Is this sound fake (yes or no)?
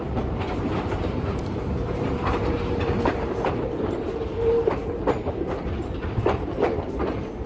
yes